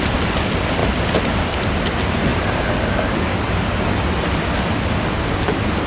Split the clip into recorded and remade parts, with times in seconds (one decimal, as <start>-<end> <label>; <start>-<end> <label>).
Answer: 0.0-5.9 recorded